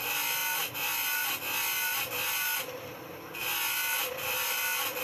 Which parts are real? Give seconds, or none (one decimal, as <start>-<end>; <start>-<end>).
0.0-5.0

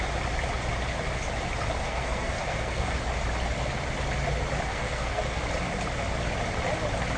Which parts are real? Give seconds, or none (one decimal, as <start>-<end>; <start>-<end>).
0.0-1.8; 3.0-4.7; 5.4-7.2

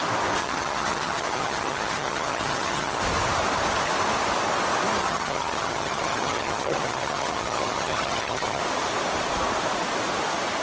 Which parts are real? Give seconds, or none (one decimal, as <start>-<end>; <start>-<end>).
0.0-0.4; 3.0-5.0; 8.6-10.6

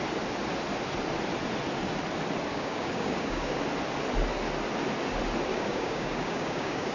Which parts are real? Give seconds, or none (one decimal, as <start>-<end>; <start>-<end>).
0.0-2.5; 3.6-5.5

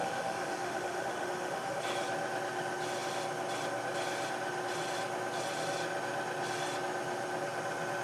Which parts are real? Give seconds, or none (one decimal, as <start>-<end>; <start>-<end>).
1.8-8.0